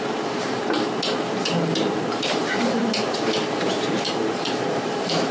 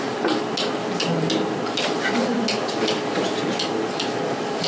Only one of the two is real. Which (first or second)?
second